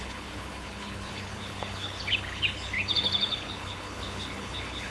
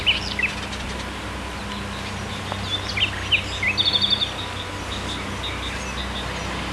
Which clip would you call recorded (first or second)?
second